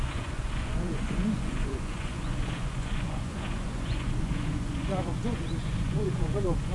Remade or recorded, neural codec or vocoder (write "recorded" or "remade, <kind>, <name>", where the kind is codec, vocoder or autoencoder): remade, vocoder, Vocos